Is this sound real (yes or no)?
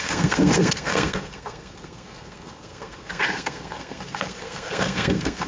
no